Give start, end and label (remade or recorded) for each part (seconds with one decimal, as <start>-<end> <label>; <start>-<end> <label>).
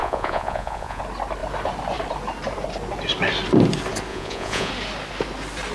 0.0-1.0 remade; 1.0-4.1 recorded; 4.1-4.7 remade; 4.7-5.7 recorded